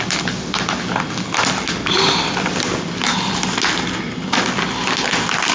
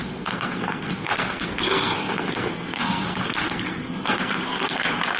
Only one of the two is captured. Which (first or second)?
first